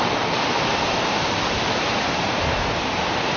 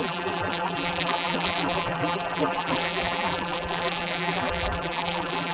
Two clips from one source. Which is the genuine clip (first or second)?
first